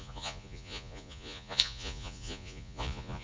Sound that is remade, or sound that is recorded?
remade